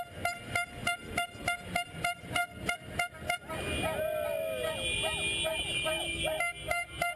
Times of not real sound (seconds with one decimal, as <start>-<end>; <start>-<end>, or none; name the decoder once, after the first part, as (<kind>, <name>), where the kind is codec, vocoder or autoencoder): 5.5-6.2 (vocoder, BigVGAN v2)